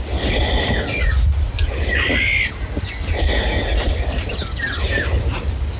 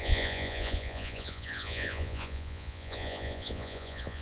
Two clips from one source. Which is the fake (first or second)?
second